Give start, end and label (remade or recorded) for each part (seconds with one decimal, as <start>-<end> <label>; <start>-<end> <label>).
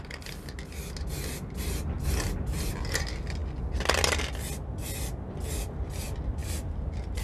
0.0-7.2 recorded